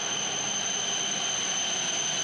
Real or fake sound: real